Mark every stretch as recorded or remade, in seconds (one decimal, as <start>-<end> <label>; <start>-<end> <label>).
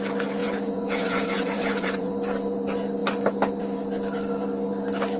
0.0-0.4 recorded; 0.4-2.1 remade; 2.1-5.2 recorded